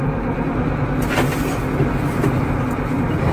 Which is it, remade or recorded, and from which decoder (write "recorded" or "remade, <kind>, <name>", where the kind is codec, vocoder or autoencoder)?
recorded